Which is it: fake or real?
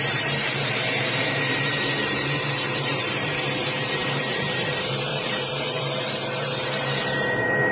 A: fake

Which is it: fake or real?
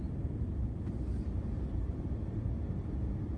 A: real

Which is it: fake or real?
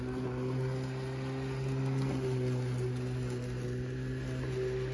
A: real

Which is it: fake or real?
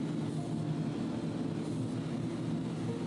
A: real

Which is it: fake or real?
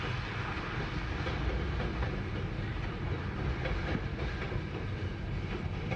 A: real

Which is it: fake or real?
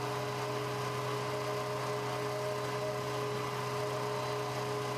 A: real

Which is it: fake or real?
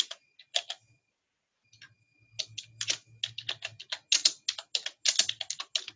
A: real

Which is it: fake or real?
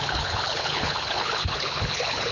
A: fake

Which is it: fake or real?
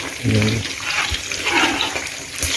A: real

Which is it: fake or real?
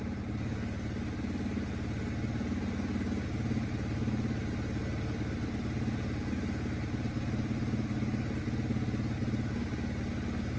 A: real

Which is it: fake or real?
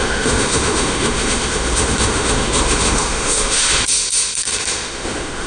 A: fake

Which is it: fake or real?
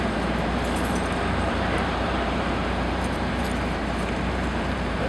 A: fake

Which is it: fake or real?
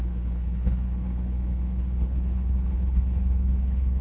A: fake